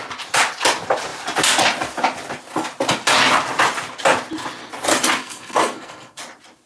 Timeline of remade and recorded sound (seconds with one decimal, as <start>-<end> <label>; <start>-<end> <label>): 0.0-5.2 recorded; 5.2-6.2 remade; 6.2-6.7 recorded